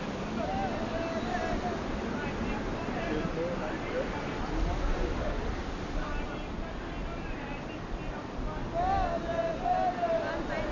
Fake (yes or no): no